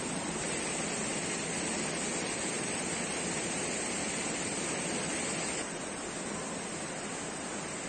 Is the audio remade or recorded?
recorded